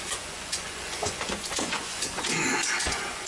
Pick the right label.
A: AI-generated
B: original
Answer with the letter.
A